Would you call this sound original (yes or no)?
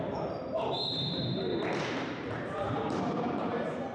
no